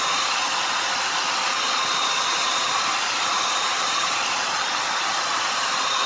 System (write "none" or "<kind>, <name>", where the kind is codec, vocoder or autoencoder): none